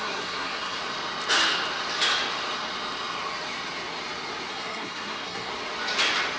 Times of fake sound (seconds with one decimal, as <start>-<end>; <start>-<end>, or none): 0.0-0.8; 4.5-5.5